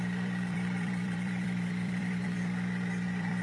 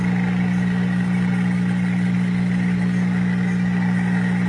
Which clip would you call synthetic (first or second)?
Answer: first